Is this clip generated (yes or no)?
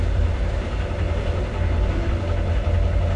no